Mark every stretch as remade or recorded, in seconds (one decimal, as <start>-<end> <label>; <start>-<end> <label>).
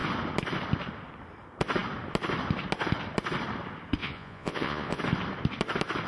0.0-4.0 recorded; 4.0-5.0 remade; 5.0-6.1 recorded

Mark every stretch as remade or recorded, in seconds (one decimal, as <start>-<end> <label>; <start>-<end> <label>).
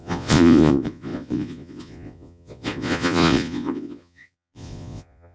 0.0-5.3 remade